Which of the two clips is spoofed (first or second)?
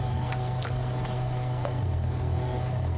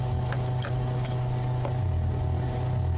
first